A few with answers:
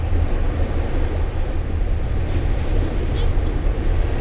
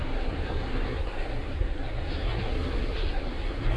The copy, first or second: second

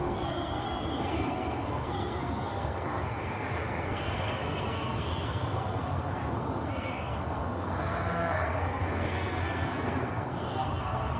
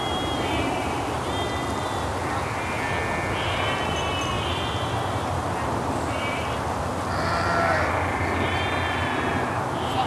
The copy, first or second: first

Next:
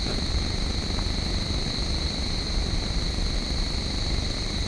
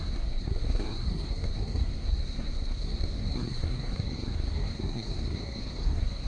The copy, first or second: second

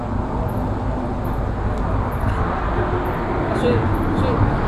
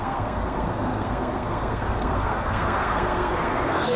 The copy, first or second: second